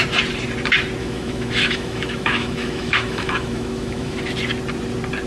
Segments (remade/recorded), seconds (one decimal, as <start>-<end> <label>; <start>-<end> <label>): 0.0-1.0 recorded; 1.0-4.2 remade; 4.2-5.3 recorded